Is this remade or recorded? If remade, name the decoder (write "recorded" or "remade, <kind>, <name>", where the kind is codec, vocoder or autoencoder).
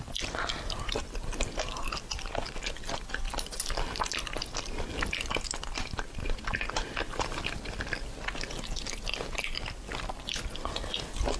recorded